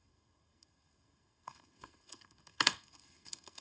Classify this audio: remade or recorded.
remade